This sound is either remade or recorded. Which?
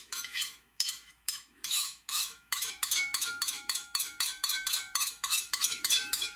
remade